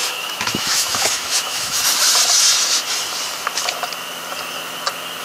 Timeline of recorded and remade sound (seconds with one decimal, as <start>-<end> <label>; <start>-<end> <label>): 0.0-1.8 remade; 1.8-5.2 recorded